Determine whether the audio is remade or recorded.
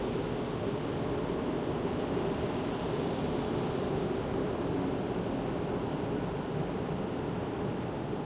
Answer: recorded